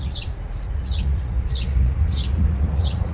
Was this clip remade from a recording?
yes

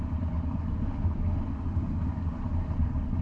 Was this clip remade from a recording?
no